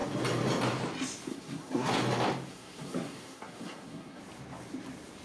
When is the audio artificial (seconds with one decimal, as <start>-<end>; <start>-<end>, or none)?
1.3-1.9; 2.5-4.2

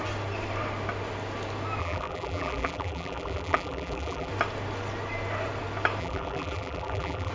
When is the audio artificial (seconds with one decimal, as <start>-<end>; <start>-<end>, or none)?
1.8-4.3; 6.0-7.3

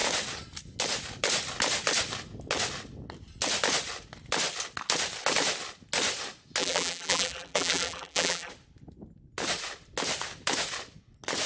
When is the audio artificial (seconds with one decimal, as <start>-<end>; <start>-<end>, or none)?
6.6-8.5

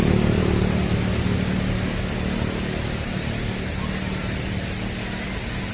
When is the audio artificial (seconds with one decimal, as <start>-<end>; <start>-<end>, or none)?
none

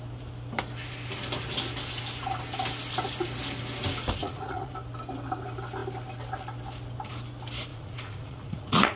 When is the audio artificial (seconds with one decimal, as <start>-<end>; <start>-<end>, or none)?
4.2-4.7; 7.7-9.0

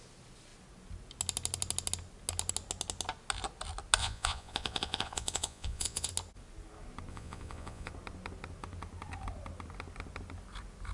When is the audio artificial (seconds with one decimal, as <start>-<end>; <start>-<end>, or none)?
4.0-6.1; 7.1-7.9